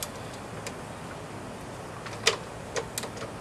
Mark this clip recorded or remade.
recorded